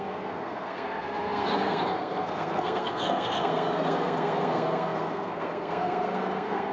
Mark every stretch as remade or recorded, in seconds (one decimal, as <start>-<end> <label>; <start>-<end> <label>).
0.0-6.7 remade